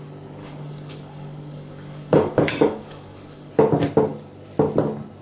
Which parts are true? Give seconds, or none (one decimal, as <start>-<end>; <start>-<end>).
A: 0.0-0.4; 3.5-5.2